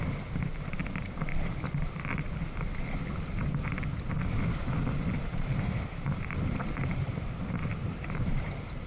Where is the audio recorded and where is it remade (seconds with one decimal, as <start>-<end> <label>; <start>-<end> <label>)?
0.0-1.3 remade; 1.3-5.2 recorded; 5.2-8.9 remade